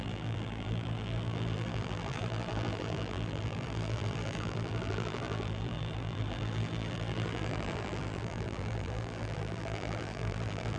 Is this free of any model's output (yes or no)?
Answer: no